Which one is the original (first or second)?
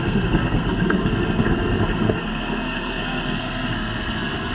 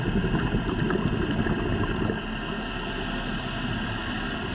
second